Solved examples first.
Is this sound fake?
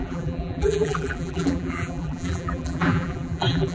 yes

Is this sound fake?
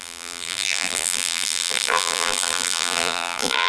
yes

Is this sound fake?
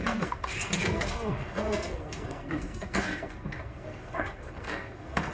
yes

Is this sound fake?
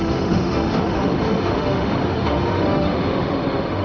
yes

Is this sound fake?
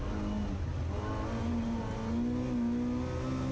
no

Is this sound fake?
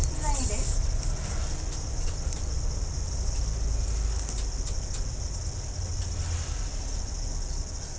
no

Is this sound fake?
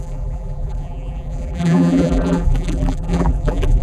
yes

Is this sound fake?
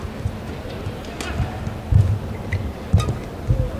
no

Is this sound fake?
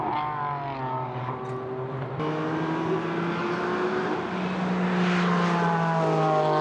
no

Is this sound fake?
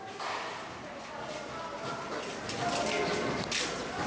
no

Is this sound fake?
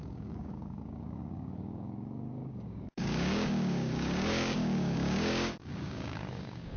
yes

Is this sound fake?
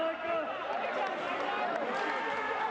no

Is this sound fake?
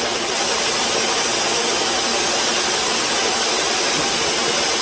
no